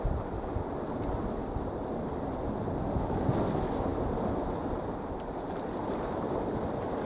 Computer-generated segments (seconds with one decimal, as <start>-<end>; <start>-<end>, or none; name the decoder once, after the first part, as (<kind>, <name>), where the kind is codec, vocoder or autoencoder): none